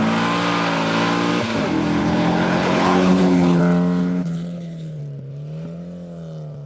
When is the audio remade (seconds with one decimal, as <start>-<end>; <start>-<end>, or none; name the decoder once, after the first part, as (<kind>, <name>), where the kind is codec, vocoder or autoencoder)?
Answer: 2.0-3.6 (codec, HILCodec); 4.0-5.0